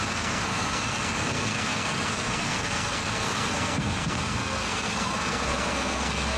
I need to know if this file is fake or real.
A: fake